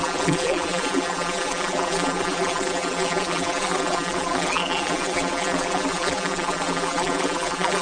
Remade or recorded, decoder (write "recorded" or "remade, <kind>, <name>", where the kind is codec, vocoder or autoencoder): remade, vocoder, BigVGAN v2